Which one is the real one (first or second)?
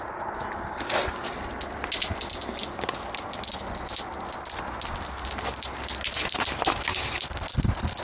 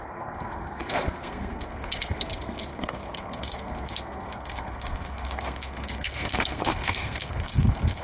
first